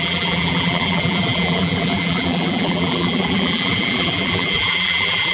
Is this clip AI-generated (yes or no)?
yes